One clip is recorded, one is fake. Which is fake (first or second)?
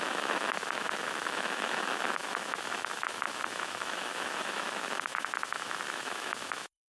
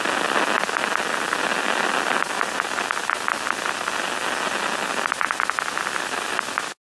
first